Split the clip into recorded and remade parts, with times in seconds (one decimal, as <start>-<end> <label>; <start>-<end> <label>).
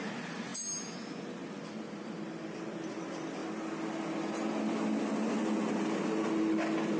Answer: 0.0-7.0 recorded